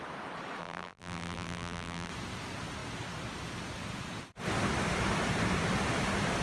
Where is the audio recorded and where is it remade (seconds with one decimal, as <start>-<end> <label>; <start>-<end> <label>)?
0.0-0.6 recorded; 0.6-2.1 remade; 2.1-6.4 recorded